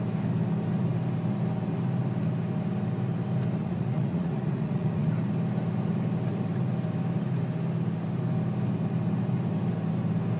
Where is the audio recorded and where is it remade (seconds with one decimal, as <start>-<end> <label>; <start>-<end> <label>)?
0.0-3.6 recorded; 3.6-5.1 remade; 5.1-10.4 recorded